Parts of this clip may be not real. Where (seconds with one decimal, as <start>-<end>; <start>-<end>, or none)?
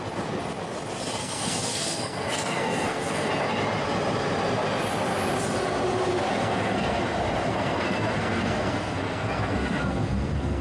1.2-3.3; 6.4-7.0; 7.5-10.6